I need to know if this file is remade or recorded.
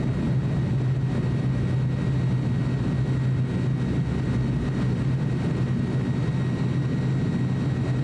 recorded